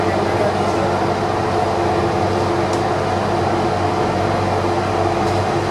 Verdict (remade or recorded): recorded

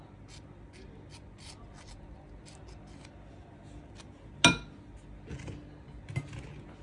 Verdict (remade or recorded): recorded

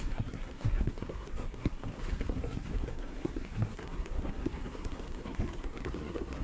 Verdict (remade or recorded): remade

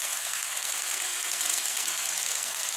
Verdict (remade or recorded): remade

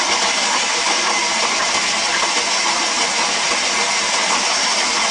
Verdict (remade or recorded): recorded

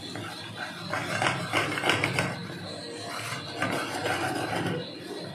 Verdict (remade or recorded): recorded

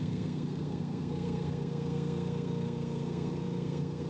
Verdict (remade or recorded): remade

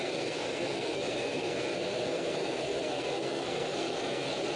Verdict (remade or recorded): remade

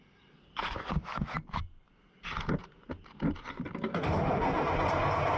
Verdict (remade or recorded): recorded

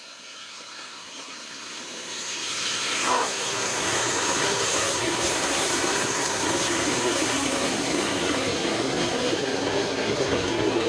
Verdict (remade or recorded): remade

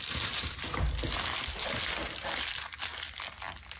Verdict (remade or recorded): recorded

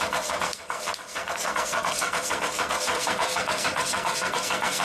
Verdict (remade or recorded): remade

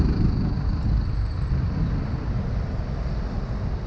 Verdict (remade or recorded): recorded